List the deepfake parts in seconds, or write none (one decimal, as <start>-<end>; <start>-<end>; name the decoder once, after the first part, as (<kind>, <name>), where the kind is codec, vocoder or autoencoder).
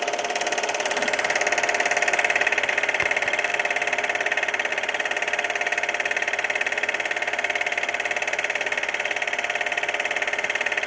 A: none